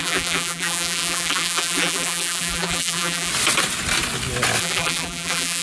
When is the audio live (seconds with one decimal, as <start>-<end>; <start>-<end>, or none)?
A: 3.3-4.6